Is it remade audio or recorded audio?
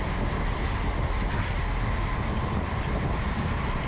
remade